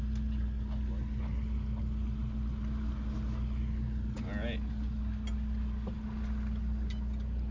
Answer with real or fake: real